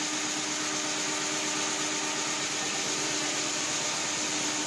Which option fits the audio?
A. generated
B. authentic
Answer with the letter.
B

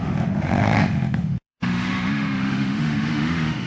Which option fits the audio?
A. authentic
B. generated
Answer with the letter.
B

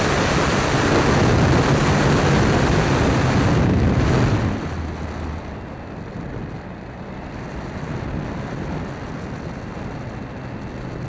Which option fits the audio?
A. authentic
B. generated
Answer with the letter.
A